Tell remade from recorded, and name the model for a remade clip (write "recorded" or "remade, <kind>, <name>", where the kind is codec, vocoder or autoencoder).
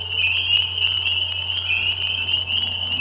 recorded